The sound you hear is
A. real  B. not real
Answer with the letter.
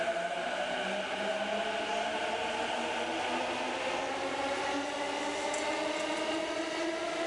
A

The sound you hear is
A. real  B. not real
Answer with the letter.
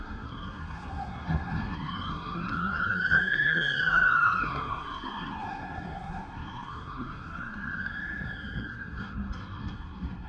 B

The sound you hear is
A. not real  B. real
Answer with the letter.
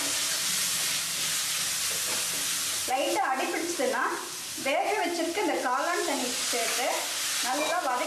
B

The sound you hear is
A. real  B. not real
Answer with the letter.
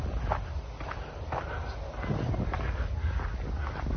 A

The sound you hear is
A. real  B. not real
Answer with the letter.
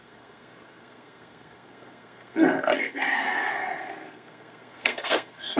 B